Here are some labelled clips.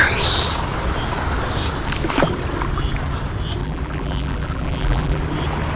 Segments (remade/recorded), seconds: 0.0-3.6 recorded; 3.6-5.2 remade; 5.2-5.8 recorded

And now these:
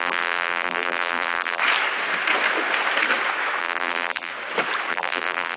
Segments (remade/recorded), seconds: 0.0-1.6 remade; 1.6-3.6 recorded; 3.6-4.3 remade; 4.3-4.9 recorded; 4.9-5.6 remade

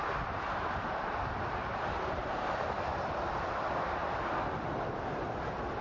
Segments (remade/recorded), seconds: 0.0-1.6 recorded; 1.6-3.1 remade; 3.1-5.8 recorded

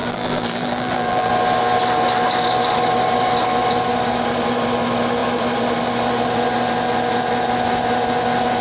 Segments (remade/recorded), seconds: 0.0-1.3 remade; 1.3-8.6 recorded

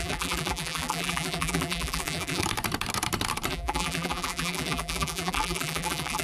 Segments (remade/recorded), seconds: 0.0-2.4 remade; 2.4-3.5 recorded; 3.5-6.2 remade

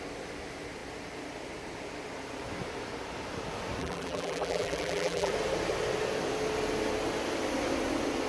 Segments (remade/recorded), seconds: 0.0-3.8 recorded; 3.8-5.3 remade; 5.3-8.3 recorded

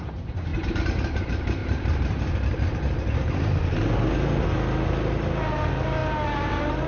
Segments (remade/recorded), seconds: 0.0-1.6 recorded; 1.6-3.7 remade; 3.7-6.9 recorded